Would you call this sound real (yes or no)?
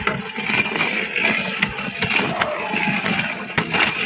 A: yes